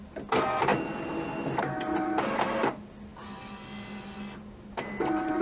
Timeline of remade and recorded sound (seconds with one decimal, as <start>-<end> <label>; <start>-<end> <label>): 0.0-5.4 recorded